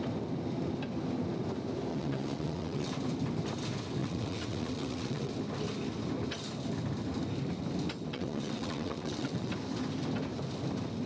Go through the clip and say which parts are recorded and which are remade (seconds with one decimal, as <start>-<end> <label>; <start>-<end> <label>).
0.0-1.9 recorded; 1.9-2.9 remade; 2.9-4.0 recorded; 4.0-5.3 remade; 5.3-8.1 recorded; 8.1-9.5 remade; 9.5-11.1 recorded

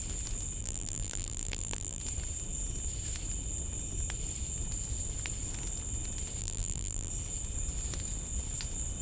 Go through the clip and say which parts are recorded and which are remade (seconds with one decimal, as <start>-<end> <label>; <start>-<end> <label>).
0.0-0.6 recorded; 0.6-2.0 remade; 2.0-6.4 recorded; 6.4-7.1 remade; 7.1-9.0 recorded

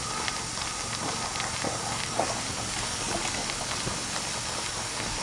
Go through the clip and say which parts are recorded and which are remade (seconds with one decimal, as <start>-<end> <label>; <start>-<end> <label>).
0.0-1.8 recorded; 1.8-3.4 remade; 3.4-4.5 recorded; 4.5-5.2 remade

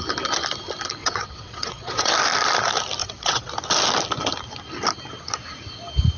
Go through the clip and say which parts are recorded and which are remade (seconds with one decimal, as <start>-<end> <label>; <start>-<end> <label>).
0.0-1.0 recorded; 1.0-2.1 remade; 2.1-3.0 recorded; 3.0-3.5 remade; 3.5-6.2 recorded